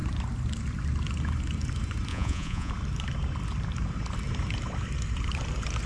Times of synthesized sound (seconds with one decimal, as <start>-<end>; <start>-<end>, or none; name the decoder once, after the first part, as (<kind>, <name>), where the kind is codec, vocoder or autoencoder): 2.1-2.7 (vocoder, Vocos)